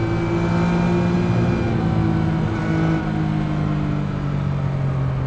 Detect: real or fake real